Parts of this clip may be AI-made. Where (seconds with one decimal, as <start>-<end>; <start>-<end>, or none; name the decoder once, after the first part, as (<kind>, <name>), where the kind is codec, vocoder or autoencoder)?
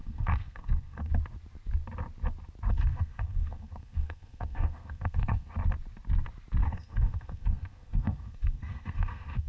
0.0-1.1 (codec, SNAC); 2.7-5.5; 6.6-9.5